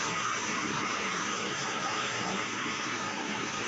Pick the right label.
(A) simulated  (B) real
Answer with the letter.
A